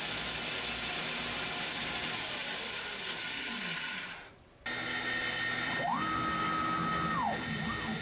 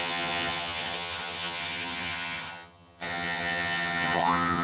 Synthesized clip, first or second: second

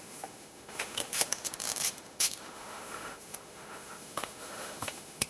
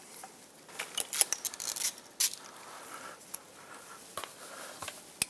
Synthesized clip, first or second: first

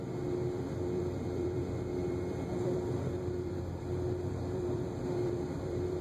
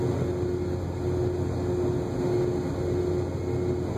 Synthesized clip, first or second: first